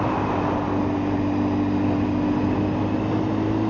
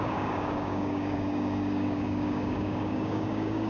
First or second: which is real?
first